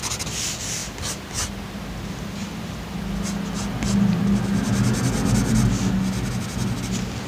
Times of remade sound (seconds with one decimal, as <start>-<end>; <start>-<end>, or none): none